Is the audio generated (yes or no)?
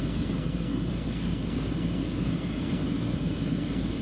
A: yes